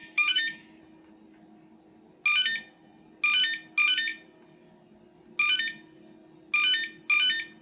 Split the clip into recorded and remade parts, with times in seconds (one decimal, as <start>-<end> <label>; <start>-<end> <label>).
0.0-0.8 remade; 0.8-7.6 recorded